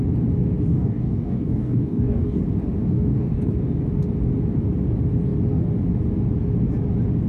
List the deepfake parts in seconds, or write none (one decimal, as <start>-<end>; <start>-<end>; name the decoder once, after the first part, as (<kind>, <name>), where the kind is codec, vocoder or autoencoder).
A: 0.7-2.4 (codec, DAC); 2.8-3.5